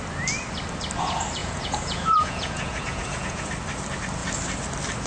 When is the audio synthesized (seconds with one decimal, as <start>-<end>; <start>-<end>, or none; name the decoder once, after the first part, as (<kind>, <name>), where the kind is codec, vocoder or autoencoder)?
1.4-3.5 (vocoder, Vocos)